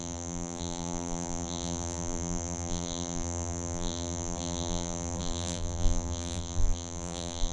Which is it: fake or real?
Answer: fake